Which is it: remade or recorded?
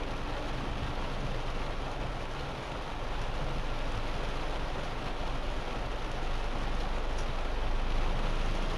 recorded